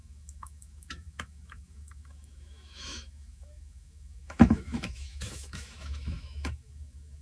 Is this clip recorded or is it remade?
remade